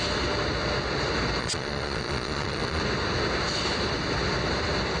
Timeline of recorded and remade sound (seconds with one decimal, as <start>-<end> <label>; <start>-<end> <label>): 0.0-1.4 recorded; 1.4-2.8 remade; 2.8-5.0 recorded